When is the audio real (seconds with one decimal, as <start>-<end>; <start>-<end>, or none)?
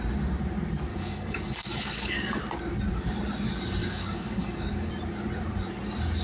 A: 0.0-0.9; 2.4-3.8; 4.9-6.2